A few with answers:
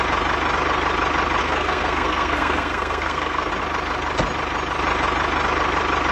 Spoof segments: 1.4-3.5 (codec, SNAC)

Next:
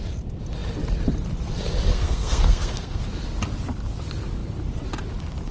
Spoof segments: 1.9-3.0 (codec, SNAC)

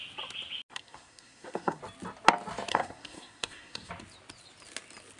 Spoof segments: 0.7-1.8 (codec, SNAC); 2.7-3.9

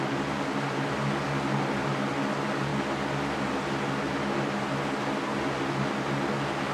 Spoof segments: none

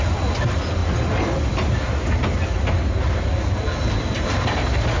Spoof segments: none

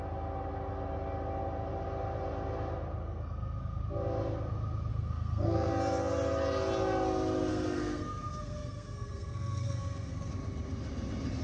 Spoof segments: 3.0-3.8 (codec, SNAC); 4.9-5.7; 7.5-10.3

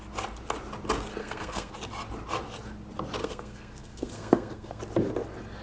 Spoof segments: 1.2-1.7 (codec, SNAC); 3.2-4.8

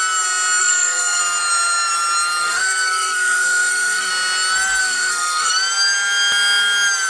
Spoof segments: 0.6-1.2 (codec, SNAC); 2.4-4.1; 4.8-5.5